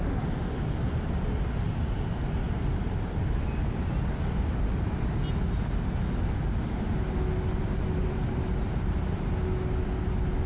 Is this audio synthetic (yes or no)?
no